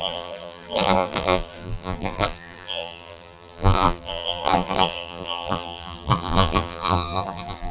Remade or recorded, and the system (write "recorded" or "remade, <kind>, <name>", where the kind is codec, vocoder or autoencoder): remade, vocoder, BigVGAN v2